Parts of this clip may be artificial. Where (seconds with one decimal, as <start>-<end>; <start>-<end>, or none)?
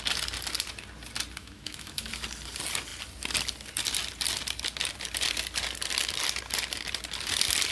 1.4-2.1